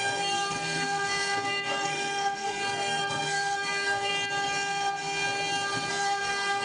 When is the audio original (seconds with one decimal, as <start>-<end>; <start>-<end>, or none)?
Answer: 4.1-5.9